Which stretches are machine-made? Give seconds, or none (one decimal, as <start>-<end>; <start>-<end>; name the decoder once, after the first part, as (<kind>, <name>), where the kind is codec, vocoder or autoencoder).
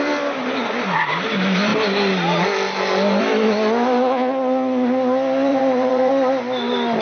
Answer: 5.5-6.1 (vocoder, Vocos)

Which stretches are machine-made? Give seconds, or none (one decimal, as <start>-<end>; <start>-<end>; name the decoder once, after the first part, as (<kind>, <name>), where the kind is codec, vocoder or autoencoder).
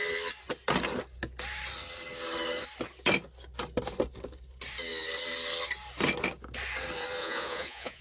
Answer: 7.2-8.0 (vocoder, Vocos)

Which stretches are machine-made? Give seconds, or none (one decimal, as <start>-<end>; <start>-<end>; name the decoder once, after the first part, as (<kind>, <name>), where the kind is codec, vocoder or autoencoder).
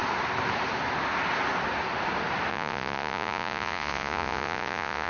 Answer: 2.5-5.1 (vocoder, Vocos)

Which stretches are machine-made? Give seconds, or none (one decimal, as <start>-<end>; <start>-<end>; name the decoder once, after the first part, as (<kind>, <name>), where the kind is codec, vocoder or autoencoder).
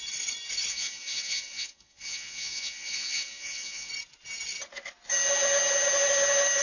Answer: 0.7-3.9 (vocoder, Vocos)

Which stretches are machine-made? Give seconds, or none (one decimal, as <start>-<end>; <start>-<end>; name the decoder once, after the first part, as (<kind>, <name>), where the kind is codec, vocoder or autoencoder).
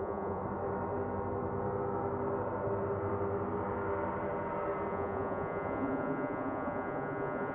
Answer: 0.0-0.4 (vocoder, Vocos); 4.9-7.5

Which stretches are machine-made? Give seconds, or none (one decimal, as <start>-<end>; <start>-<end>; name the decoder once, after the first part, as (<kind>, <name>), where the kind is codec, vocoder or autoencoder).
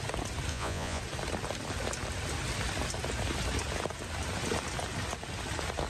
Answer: 0.5-1.0 (vocoder, Vocos)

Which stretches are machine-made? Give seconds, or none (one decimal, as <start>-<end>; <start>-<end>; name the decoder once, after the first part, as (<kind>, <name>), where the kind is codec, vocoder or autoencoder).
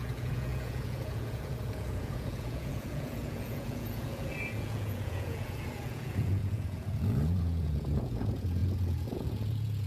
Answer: 0.0-9.9 (vocoder, Vocos)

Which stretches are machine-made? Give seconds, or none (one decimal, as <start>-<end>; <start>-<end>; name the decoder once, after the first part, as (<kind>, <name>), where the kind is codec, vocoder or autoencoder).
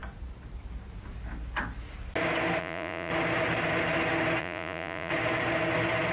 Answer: 2.6-3.1 (vocoder, Vocos); 4.4-5.1